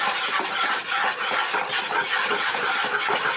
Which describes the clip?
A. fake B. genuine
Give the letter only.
B